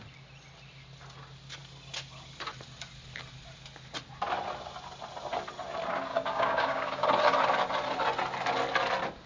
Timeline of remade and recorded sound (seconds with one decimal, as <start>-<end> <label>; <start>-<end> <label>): 0.0-6.1 recorded; 6.1-7.1 remade; 7.1-9.3 recorded